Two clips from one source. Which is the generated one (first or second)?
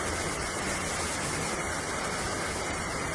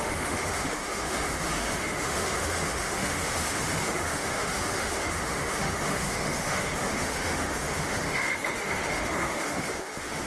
second